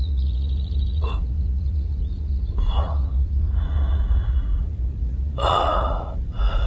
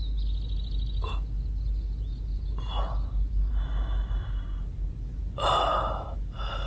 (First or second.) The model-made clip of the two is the first